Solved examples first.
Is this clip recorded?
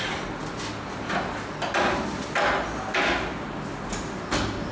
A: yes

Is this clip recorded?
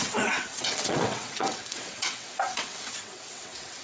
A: no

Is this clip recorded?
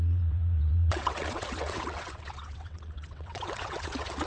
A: no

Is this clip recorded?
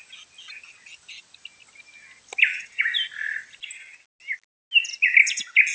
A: yes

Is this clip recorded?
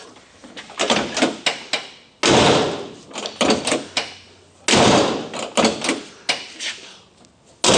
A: yes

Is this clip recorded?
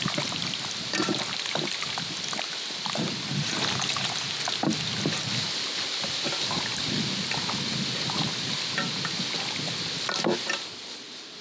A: yes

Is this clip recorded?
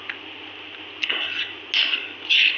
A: yes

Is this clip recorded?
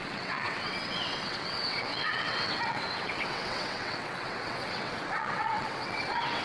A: no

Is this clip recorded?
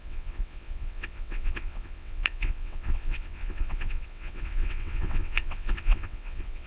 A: no